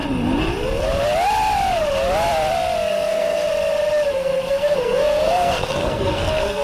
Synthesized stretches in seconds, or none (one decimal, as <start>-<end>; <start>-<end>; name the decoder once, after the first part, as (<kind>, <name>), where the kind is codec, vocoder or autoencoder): 2.9-3.5 (codec, SNAC); 4.1-6.6